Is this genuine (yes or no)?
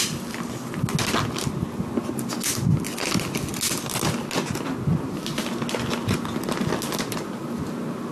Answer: yes